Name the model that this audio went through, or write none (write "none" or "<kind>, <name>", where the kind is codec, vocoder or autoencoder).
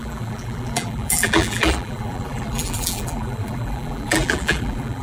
vocoder, BigVGAN v2